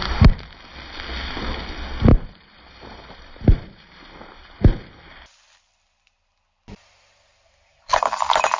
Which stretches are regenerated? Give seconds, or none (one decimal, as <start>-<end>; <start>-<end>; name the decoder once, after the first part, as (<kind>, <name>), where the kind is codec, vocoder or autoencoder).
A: 2.1-4.8 (vocoder, BigVGAN v2)